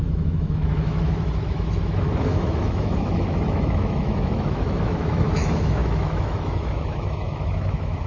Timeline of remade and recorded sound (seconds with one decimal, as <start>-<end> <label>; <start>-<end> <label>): 0.0-8.1 remade